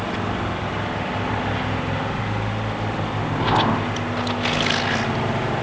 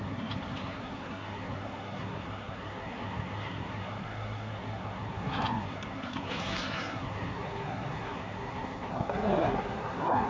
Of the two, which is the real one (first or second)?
first